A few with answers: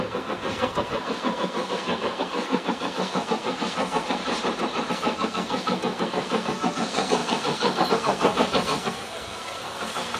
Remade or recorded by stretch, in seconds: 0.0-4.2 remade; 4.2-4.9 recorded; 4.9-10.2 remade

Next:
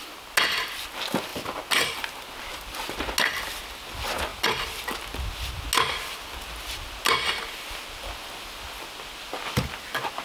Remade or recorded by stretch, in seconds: 0.0-10.2 recorded

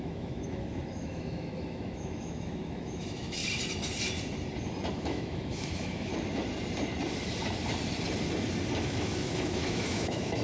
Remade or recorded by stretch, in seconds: 0.0-3.4 remade; 3.4-4.9 recorded; 4.9-6.1 remade; 6.1-8.8 recorded; 8.8-10.4 remade

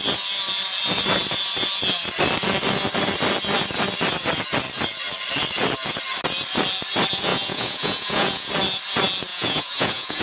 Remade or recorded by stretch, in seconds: 0.0-7.3 recorded; 7.3-8.5 remade; 8.5-9.3 recorded; 9.3-10.2 remade

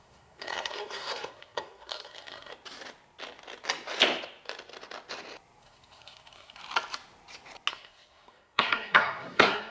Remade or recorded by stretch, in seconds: 0.0-2.5 remade; 2.5-5.6 recorded; 5.6-6.6 remade; 6.6-7.7 recorded; 7.7-9.7 remade

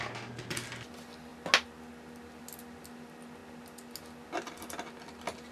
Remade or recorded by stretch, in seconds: 0.0-5.5 recorded

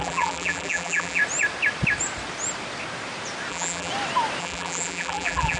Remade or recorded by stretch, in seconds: 0.0-1.2 remade; 1.2-3.5 recorded; 3.5-3.9 remade; 3.9-4.4 recorded; 4.4-5.6 remade